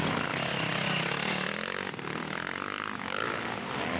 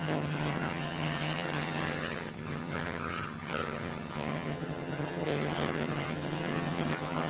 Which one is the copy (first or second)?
second